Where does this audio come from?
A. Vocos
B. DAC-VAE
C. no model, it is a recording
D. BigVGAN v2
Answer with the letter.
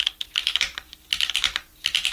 C